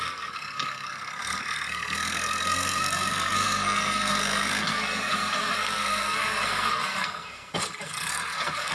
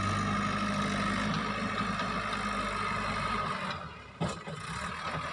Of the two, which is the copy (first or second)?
first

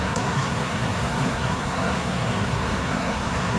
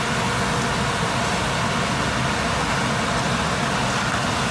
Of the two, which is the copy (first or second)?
first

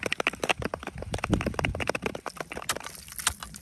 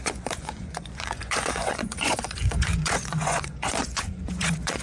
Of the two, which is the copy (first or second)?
second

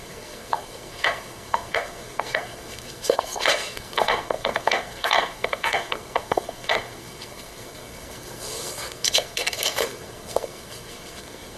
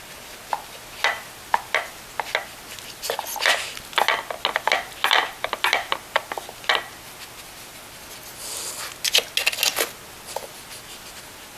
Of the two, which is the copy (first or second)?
first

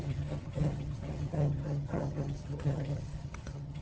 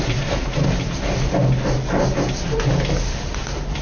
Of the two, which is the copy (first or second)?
first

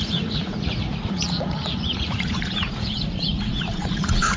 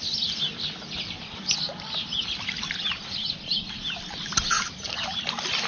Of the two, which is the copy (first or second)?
first